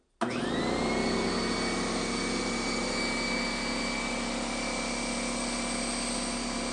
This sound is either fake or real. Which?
real